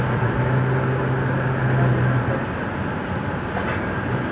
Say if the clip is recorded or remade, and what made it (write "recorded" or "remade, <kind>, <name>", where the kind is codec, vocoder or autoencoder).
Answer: recorded